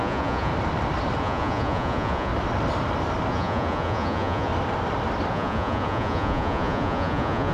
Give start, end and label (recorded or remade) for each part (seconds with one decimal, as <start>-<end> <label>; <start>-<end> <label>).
0.0-0.5 remade; 0.5-1.2 recorded; 1.2-2.3 remade; 2.3-3.3 recorded; 3.3-4.5 remade; 4.5-5.3 recorded; 5.3-7.5 remade